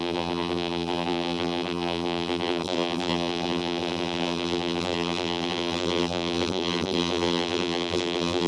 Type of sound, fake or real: fake